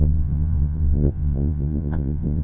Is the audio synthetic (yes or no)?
yes